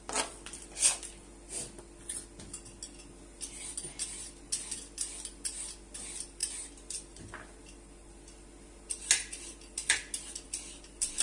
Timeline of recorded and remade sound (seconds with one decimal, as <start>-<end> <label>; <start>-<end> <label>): 0.0-11.2 recorded